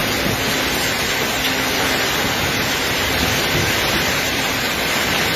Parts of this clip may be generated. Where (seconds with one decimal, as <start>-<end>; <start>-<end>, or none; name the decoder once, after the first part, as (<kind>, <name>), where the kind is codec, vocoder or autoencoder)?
3.2-5.4 (vocoder, BigVGAN v2)